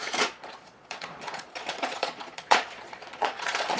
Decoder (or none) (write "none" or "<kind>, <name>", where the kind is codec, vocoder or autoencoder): vocoder, Vocos